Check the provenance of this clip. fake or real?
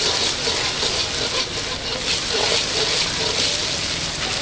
real